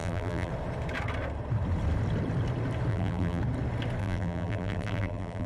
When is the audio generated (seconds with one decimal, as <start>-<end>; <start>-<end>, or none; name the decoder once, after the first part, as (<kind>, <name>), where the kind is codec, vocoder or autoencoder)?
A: 0.0-0.5 (vocoder, BigVGAN v2); 2.9-3.4; 4.0-5.5